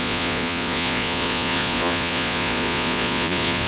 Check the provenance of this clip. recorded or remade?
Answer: remade